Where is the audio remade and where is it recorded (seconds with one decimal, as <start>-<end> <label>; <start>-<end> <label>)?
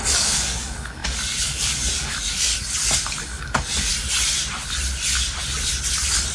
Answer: 0.0-2.5 remade; 2.5-3.2 recorded; 3.2-3.9 remade; 3.9-6.3 recorded